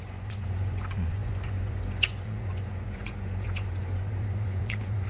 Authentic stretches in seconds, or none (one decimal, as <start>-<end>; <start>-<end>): none